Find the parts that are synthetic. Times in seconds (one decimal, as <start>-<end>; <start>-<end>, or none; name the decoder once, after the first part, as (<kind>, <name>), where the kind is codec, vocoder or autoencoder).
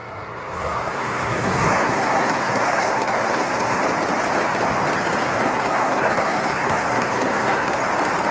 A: 0.0-3.8 (codec, SNAC); 5.2-7.8